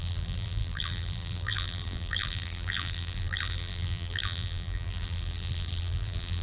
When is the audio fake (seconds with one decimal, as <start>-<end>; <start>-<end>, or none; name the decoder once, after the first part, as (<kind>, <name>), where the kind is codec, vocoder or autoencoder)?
0.0-6.4 (vocoder, BigVGAN v2)